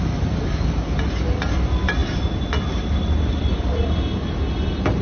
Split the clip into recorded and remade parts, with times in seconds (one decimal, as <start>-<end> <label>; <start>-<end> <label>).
0.0-5.0 recorded